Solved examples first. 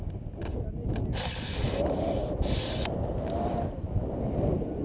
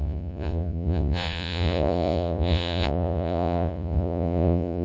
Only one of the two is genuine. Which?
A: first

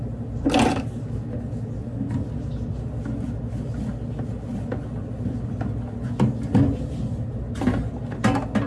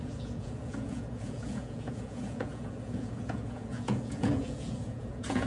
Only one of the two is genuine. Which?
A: first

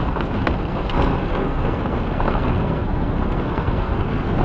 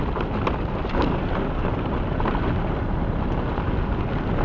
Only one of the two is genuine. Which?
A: second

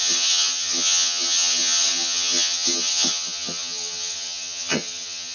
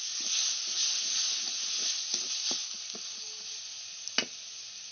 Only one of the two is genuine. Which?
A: second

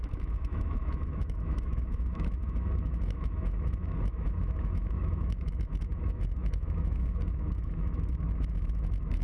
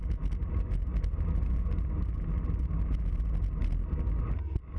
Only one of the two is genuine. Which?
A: second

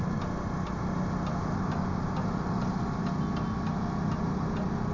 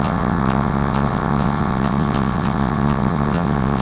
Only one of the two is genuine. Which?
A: first